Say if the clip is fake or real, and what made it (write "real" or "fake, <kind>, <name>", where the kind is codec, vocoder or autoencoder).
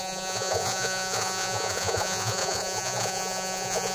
fake, vocoder, Vocos